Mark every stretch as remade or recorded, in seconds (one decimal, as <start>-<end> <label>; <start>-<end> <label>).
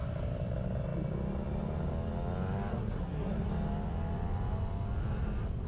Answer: 0.0-2.7 recorded; 2.7-3.5 remade; 3.5-5.7 recorded